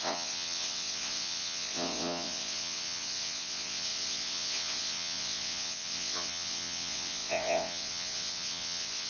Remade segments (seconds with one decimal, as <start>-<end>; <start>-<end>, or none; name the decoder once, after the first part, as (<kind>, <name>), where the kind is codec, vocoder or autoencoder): 0.0-9.1 (vocoder, WaveNeXt)